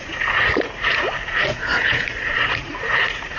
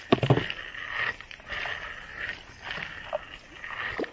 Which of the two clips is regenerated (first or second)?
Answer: first